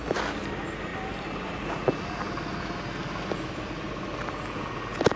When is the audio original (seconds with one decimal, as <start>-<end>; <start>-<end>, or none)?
0.0-5.2